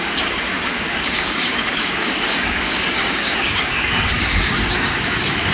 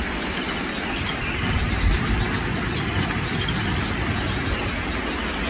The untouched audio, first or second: second